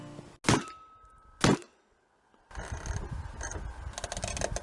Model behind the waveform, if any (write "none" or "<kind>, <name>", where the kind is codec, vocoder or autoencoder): none